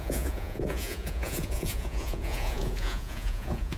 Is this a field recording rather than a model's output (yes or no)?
no